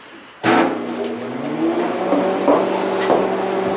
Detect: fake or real real